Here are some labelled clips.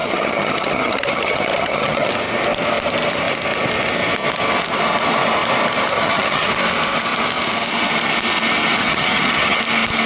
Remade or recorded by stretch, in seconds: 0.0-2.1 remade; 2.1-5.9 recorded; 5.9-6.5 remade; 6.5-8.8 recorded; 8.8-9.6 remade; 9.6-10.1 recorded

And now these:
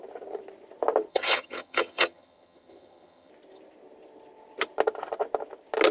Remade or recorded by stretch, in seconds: 0.0-1.1 recorded; 1.1-3.3 remade; 3.3-5.9 recorded

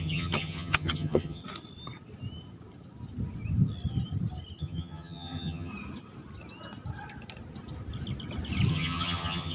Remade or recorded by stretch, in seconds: 0.0-1.4 remade; 1.4-4.6 recorded; 4.6-5.7 remade; 5.7-8.7 recorded; 8.7-9.5 remade

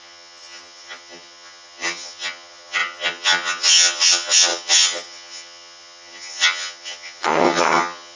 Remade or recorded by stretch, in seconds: 0.0-8.2 remade

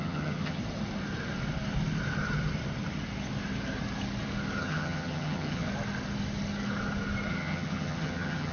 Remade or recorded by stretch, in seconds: 0.0-0.6 remade; 0.6-4.6 recorded; 4.6-5.7 remade; 5.7-7.3 recorded; 7.3-8.5 remade

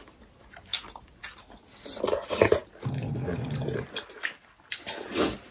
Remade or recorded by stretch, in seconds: 0.0-5.5 recorded

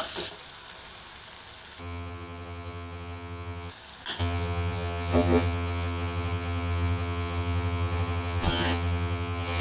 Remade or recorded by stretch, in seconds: 0.0-1.8 recorded; 1.8-3.7 remade; 3.7-4.2 recorded; 4.2-9.6 remade